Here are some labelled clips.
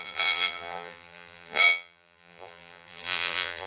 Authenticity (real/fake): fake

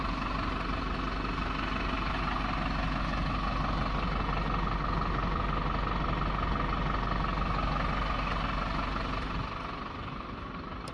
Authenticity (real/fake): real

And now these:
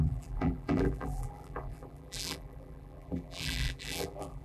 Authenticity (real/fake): fake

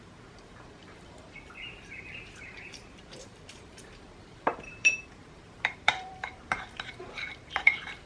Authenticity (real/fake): fake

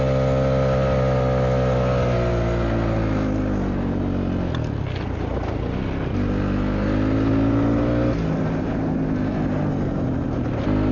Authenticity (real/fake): real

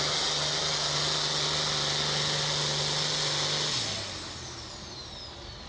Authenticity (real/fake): real